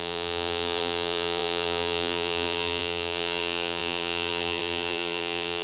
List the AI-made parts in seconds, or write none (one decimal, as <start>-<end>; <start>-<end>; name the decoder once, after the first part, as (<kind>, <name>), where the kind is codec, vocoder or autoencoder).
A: 0.0-5.6 (vocoder, BigVGAN v2)